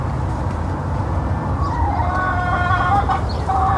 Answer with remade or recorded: remade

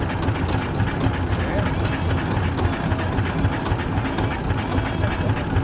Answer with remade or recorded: recorded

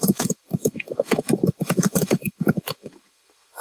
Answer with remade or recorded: remade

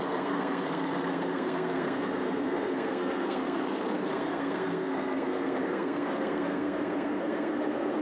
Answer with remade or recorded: remade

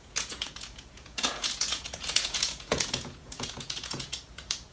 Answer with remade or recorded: remade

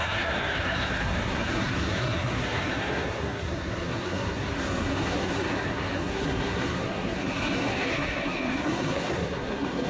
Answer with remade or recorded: remade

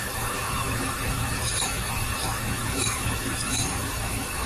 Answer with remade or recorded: remade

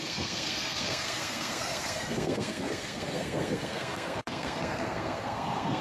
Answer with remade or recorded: remade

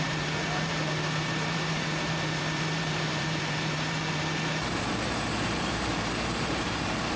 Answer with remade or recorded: remade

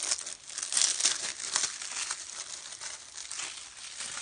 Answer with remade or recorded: recorded